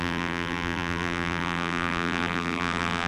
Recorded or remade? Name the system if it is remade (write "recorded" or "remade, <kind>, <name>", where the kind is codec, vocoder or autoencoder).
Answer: remade, vocoder, BigVGAN v2